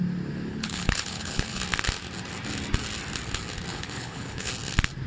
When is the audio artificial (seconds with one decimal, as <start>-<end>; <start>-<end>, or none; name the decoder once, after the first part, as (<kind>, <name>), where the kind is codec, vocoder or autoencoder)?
0.5-1.6 (codec, HILCodec); 3.7-4.5